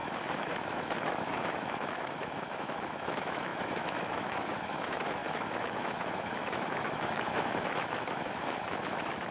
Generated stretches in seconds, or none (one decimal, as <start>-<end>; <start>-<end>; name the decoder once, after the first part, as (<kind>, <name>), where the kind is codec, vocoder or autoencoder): 0.0-9.3 (autoencoder, DAC-VAE)